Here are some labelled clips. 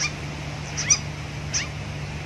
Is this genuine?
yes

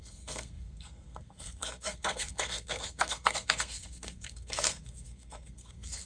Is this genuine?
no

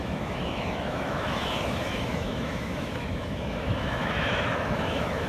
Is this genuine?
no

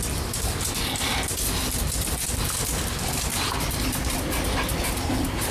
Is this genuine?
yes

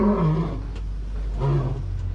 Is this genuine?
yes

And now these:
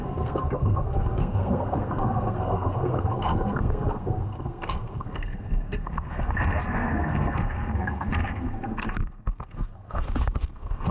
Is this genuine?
no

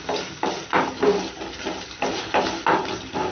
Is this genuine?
yes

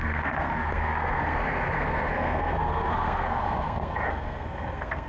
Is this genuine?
no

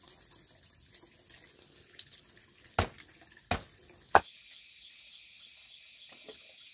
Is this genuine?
yes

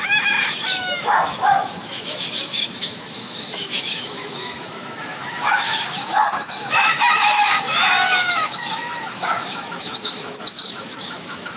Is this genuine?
no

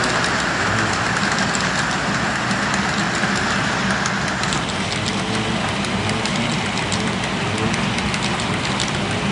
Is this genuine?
yes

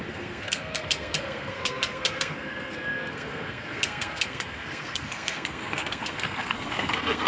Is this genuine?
no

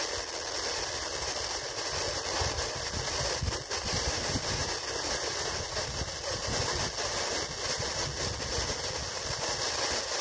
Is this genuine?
yes